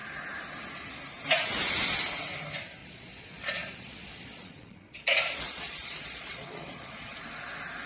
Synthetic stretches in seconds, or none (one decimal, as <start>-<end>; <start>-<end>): 2.8-7.2